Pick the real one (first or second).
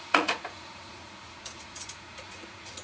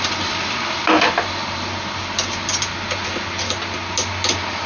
second